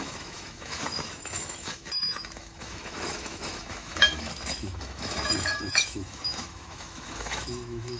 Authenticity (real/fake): fake